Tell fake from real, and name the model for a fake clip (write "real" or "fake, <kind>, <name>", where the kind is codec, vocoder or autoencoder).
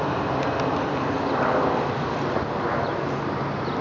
real